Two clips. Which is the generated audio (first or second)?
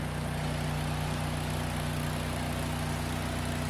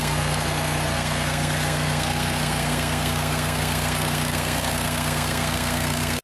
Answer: second